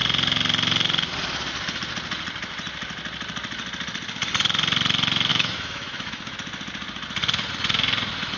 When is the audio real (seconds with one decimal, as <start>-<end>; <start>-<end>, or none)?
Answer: 0.0-5.3; 6.3-8.4